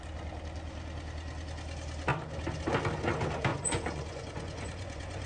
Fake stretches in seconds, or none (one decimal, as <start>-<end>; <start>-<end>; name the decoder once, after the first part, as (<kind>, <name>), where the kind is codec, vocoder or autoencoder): 3.5-5.3 (vocoder, Vocos)